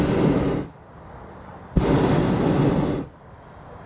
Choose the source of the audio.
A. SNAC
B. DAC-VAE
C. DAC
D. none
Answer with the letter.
D